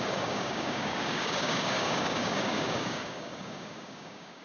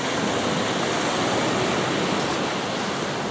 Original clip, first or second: second